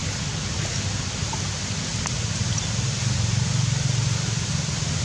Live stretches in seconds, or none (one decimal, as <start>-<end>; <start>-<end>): 1.2-1.9; 4.2-5.0